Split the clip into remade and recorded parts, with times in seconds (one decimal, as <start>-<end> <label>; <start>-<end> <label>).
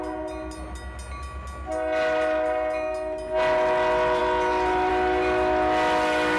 0.0-6.4 recorded